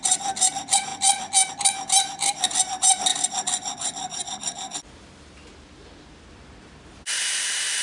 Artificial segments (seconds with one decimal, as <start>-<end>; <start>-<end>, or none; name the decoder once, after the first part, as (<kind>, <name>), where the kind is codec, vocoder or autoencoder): 0.0-0.9 (vocoder, BigVGAN v2); 1.5-3.1; 6.3-7.8